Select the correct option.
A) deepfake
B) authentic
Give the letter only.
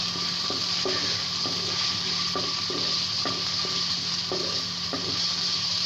B